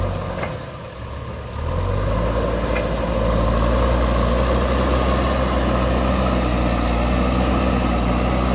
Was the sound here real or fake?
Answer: real